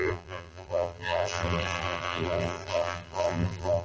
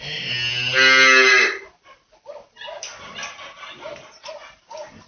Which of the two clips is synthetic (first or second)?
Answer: first